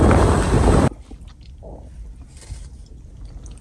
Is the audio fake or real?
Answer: real